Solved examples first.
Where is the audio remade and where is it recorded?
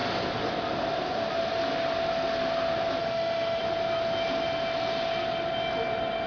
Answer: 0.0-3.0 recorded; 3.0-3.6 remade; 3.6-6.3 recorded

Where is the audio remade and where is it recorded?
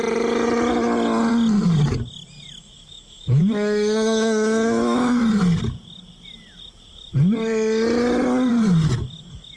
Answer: 0.0-2.6 recorded; 2.6-5.2 remade; 5.2-9.6 recorded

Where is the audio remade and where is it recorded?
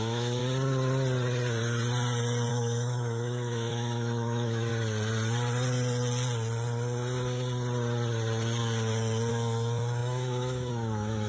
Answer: 0.0-0.4 remade; 0.4-2.5 recorded; 2.5-4.7 remade; 4.7-9.3 recorded; 9.3-11.3 remade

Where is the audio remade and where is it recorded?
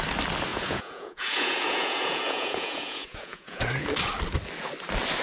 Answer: 0.0-0.5 recorded; 0.5-3.6 remade; 3.6-5.2 recorded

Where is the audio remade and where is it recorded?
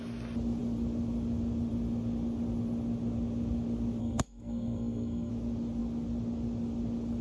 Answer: 0.0-4.0 recorded; 4.0-5.3 remade; 5.3-7.2 recorded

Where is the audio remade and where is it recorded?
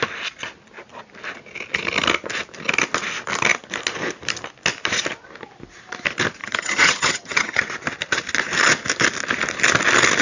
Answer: 0.0-6.4 recorded; 6.4-7.6 remade; 7.6-10.2 recorded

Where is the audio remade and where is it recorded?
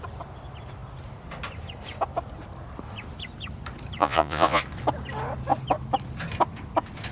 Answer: 0.0-4.0 recorded; 4.0-4.6 remade; 4.6-7.1 recorded